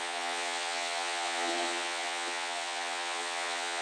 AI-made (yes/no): yes